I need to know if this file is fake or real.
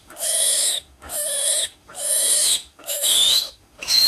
fake